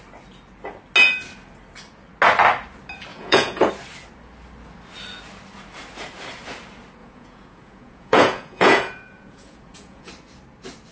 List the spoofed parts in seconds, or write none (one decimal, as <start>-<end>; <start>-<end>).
3.1-3.7; 7.0-10.1